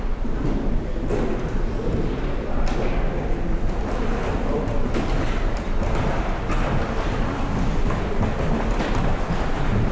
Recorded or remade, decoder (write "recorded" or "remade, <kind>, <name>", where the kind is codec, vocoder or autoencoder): recorded